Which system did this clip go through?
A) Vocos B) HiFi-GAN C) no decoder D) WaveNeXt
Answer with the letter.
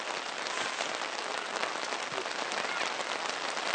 C